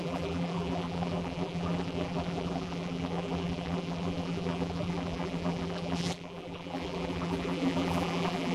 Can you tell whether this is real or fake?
fake